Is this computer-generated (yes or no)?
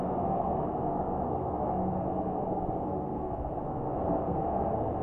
yes